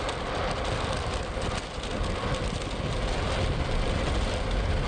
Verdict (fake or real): real